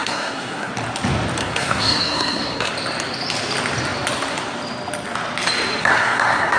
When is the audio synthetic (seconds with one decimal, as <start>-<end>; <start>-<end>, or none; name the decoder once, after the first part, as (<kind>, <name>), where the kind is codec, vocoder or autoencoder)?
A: 0.0-0.7 (codec, SNAC); 1.4-2.7; 5.8-6.6